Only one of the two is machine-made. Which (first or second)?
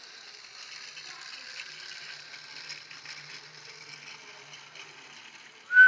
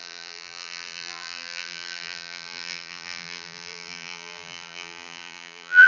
second